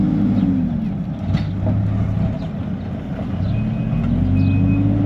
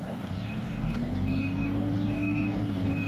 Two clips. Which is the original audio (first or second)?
first